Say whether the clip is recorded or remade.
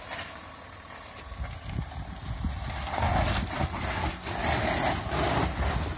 recorded